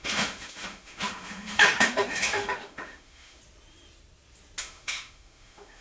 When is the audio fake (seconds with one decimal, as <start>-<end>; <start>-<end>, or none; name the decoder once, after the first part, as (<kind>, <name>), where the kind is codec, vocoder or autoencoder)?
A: 0.0-3.4 (autoencoder, DAC-VAE); 4.6-5.8

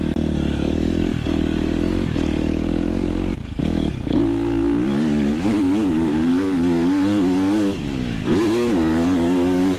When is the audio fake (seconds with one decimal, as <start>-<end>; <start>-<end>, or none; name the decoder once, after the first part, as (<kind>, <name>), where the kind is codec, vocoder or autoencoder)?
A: 0.0-9.8 (codec, DAC)

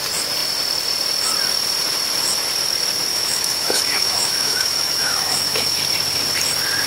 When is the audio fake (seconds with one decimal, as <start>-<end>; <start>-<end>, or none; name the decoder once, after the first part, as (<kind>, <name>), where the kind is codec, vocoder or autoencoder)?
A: 3.1-5.8 (autoencoder, DAC-VAE)